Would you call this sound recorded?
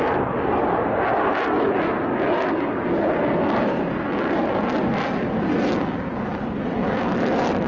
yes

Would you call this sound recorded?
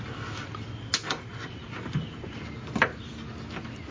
yes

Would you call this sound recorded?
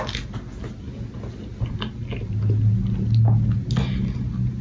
yes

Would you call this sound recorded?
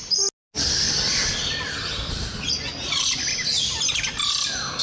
yes